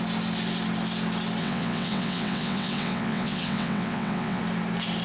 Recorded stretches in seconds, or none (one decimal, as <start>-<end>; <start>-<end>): 0.0-1.4; 4.4-5.0